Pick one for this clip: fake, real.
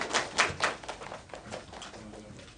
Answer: real